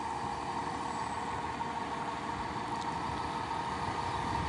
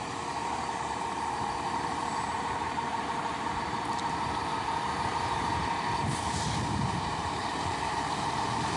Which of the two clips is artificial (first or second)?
second